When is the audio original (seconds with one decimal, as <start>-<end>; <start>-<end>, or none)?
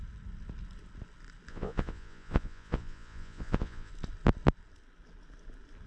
0.0-1.5; 3.9-5.9